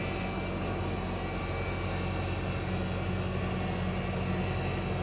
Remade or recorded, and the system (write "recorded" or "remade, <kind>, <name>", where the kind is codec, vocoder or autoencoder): recorded